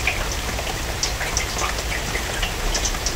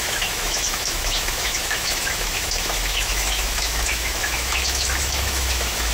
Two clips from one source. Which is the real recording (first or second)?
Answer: first